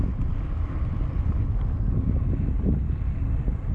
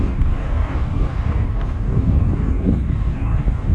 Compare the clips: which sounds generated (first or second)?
second